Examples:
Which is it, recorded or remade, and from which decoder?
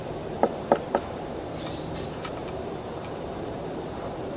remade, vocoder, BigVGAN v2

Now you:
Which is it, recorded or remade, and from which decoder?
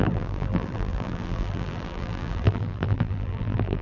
remade, vocoder, BigVGAN v2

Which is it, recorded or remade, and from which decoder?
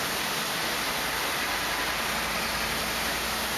recorded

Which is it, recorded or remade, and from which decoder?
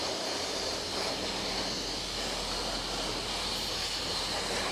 recorded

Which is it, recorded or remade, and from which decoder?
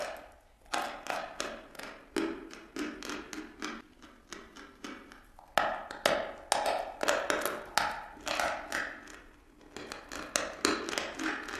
recorded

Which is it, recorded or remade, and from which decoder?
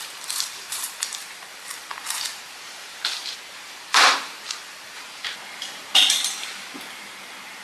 remade, vocoder, BigVGAN v2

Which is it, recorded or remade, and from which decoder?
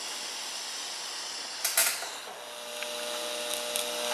recorded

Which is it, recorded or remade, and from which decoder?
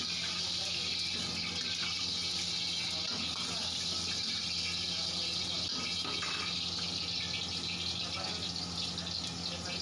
recorded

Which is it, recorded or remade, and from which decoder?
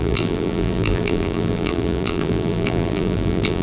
remade, vocoder, BigVGAN v2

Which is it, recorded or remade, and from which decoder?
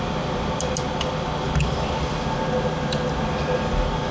remade, vocoder, BigVGAN v2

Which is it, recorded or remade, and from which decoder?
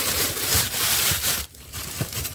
remade, vocoder, BigVGAN v2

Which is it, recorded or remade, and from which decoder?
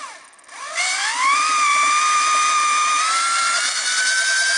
recorded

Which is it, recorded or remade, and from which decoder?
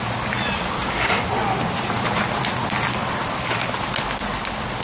remade, vocoder, BigVGAN v2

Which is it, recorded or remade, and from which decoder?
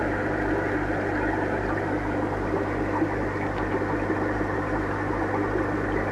recorded